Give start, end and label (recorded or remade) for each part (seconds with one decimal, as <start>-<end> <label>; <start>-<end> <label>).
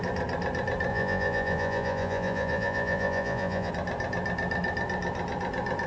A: 0.0-0.9 recorded; 0.9-3.7 remade; 3.7-5.9 recorded